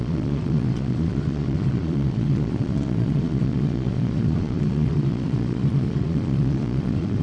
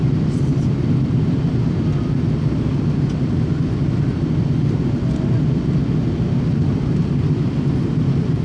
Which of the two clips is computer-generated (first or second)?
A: first